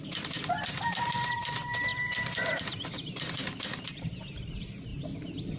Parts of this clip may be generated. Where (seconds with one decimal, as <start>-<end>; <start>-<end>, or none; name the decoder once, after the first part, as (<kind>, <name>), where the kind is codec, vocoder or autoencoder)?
0.0-4.9 (vocoder, BigVGAN v2)